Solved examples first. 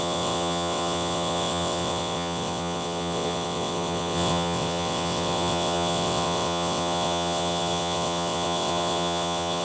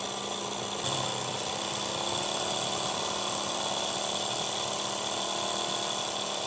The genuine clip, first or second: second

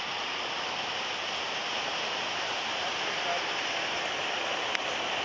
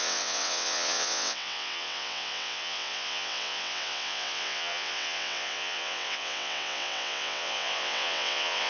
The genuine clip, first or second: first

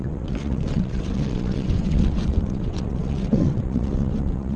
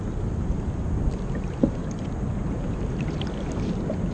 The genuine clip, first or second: second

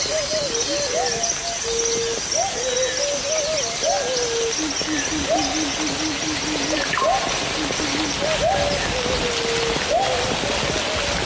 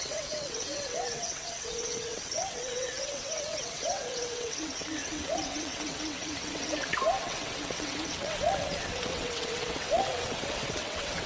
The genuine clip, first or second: first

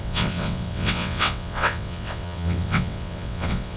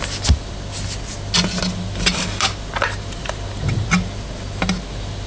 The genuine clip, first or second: second